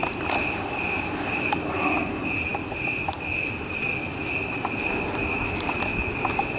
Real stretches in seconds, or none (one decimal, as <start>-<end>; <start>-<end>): 0.0-6.6